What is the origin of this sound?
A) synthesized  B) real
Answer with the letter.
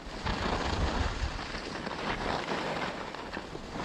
B